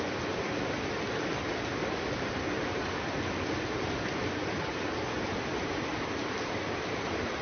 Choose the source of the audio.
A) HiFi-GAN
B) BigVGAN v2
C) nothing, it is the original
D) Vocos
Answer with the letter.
C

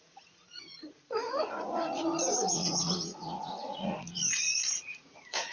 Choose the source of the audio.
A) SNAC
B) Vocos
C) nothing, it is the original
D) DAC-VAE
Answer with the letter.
B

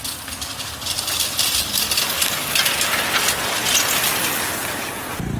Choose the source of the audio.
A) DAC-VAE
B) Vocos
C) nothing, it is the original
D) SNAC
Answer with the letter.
C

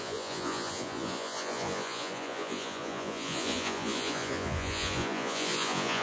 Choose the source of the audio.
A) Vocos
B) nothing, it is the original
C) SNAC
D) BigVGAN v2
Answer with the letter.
A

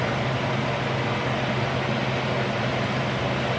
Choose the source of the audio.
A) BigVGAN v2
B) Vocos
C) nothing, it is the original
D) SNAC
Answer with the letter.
C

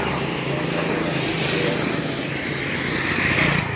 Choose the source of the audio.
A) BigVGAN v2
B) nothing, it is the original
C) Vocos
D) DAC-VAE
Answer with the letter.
B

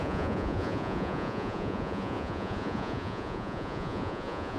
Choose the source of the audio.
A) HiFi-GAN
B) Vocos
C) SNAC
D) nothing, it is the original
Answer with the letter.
B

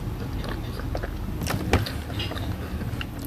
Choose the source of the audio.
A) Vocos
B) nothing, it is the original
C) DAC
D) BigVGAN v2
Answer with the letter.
B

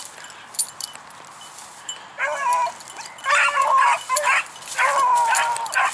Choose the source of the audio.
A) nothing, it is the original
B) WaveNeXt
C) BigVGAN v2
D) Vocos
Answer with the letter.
A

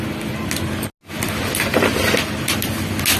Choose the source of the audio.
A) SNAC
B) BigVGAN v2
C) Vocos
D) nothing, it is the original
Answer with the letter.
D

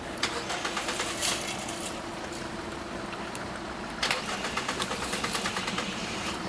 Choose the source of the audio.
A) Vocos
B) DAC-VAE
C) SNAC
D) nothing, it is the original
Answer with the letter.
D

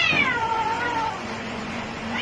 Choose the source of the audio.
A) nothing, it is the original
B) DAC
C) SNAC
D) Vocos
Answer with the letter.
D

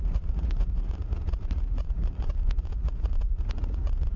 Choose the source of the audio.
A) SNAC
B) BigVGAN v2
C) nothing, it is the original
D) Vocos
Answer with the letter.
D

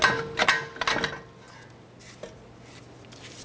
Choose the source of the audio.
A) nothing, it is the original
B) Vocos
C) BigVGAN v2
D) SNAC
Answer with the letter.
A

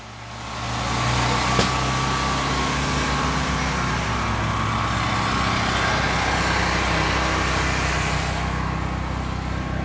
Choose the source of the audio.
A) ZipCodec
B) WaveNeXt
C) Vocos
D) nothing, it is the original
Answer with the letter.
D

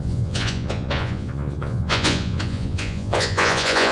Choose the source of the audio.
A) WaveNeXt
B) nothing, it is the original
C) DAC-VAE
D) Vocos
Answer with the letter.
D